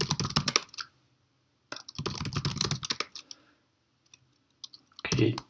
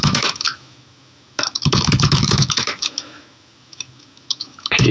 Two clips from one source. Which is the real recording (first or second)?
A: first